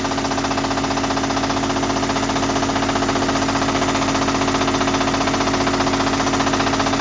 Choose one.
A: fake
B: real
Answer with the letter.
B